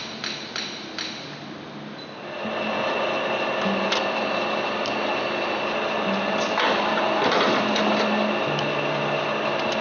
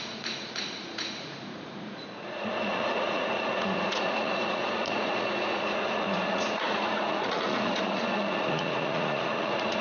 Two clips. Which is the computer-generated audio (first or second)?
second